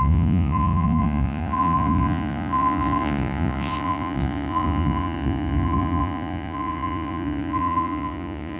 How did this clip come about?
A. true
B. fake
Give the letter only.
B